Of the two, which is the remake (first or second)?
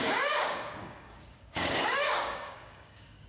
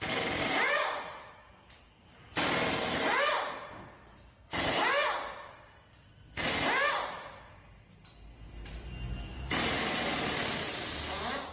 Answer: first